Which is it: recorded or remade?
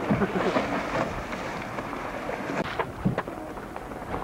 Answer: recorded